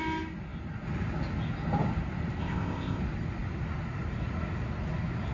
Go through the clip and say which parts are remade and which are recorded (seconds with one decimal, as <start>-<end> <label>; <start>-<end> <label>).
0.0-2.4 recorded; 2.4-3.0 remade; 3.0-5.3 recorded